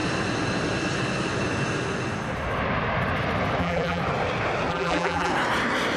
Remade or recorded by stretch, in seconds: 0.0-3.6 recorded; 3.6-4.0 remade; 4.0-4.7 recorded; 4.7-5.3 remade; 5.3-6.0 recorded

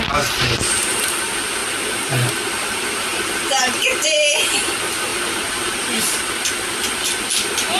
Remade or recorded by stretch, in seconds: 0.0-3.1 recorded; 3.1-3.9 remade; 3.9-5.1 recorded; 5.1-6.0 remade; 6.0-7.8 recorded

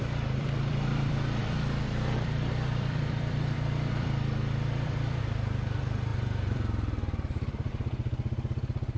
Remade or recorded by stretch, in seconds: 0.0-9.0 remade

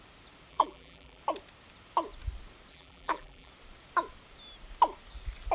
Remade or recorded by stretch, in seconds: 0.0-0.5 recorded; 0.5-1.2 remade; 1.2-2.7 recorded; 2.7-3.5 remade; 3.5-5.5 recorded

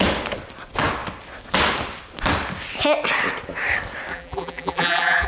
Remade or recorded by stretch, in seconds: 0.0-4.1 recorded; 4.1-5.3 remade

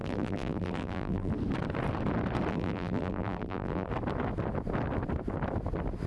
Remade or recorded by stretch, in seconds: 0.0-1.3 remade; 1.3-2.5 recorded; 2.5-3.9 remade; 3.9-6.1 recorded

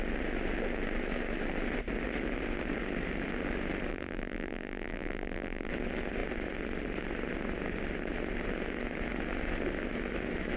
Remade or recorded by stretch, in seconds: 0.0-3.9 recorded; 3.9-5.7 remade; 5.7-10.6 recorded